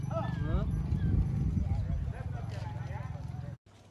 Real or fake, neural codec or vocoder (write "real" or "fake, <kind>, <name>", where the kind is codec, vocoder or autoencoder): real